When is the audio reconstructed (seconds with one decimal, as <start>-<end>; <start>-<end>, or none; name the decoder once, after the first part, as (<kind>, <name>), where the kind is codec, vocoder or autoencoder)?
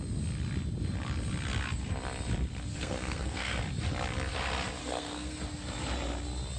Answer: 2.7-3.6 (codec, SNAC); 4.8-5.4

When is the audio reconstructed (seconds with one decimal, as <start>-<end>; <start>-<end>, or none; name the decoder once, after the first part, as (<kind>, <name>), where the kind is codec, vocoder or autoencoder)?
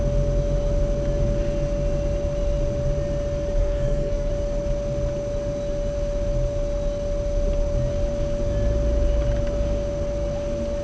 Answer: 3.6-4.3 (codec, SNAC)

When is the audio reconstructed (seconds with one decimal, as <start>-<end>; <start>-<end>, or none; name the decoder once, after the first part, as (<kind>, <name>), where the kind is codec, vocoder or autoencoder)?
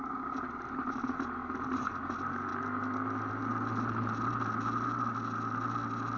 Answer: none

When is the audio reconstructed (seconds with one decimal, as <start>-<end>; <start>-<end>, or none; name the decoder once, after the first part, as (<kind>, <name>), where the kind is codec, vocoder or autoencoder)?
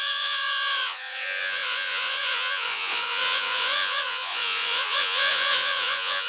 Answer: 0.0-6.3 (vocoder, Vocos)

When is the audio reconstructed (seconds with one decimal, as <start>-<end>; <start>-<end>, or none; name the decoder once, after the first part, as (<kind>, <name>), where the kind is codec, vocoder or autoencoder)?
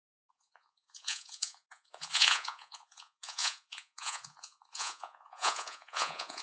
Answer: 0.0-6.4 (vocoder, Vocos)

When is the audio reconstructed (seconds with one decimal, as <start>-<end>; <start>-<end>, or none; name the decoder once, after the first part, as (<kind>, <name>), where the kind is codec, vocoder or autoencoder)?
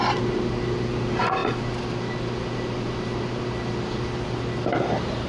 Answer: none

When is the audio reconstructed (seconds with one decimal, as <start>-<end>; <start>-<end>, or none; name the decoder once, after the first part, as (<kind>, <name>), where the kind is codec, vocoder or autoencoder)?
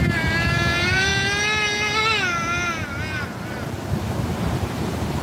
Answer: 0.0-1.1 (vocoder, BigVGAN v2); 4.2-5.2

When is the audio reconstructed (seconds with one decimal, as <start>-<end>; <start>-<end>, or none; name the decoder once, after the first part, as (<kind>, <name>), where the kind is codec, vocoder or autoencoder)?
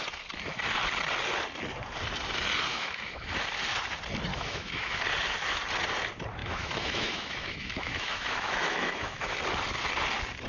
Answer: 2.7-3.3 (autoencoder, DAC-VAE); 4.3-5.0; 6.4-9.2